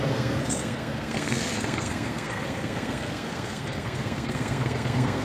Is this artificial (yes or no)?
yes